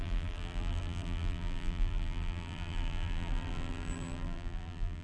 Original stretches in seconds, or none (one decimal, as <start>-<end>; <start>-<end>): none